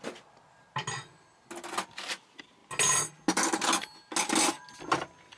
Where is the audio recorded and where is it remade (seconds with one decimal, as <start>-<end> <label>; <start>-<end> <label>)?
0.0-5.4 recorded